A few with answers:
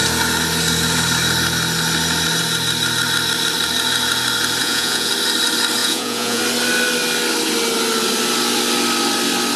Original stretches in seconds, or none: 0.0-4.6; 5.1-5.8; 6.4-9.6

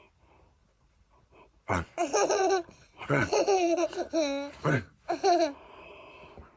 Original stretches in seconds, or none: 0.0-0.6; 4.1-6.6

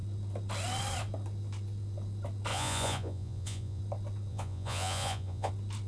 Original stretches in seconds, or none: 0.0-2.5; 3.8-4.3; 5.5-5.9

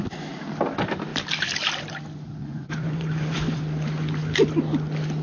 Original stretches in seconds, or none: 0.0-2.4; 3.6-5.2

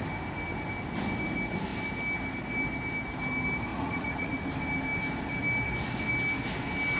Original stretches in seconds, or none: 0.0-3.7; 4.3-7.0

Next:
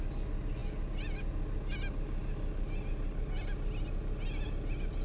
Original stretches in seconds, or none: 0.0-5.0